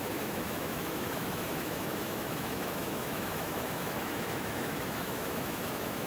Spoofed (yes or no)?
yes